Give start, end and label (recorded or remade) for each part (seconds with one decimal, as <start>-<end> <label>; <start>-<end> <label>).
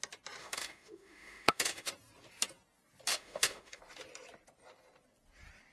0.0-0.4 recorded; 0.4-1.9 remade; 1.9-3.1 recorded; 3.1-3.8 remade; 3.8-5.7 recorded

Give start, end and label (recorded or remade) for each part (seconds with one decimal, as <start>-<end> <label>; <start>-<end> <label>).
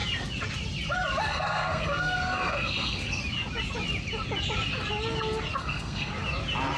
0.0-1.2 recorded; 1.2-3.2 remade; 3.2-5.6 recorded; 5.6-6.1 remade; 6.1-6.8 recorded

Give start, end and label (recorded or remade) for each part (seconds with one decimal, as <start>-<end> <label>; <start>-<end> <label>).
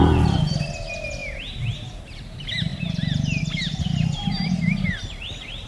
0.0-1.2 recorded; 1.2-2.0 remade; 2.0-5.7 recorded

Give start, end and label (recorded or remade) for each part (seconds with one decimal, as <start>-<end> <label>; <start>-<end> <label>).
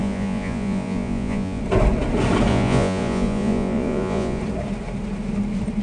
0.0-1.6 remade; 1.6-2.5 recorded; 2.5-4.4 remade; 4.4-5.8 recorded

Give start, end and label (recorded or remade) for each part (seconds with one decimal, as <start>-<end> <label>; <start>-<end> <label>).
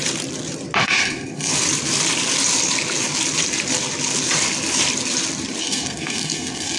0.0-0.8 recorded; 0.8-1.5 remade; 1.5-5.6 recorded; 5.6-6.8 remade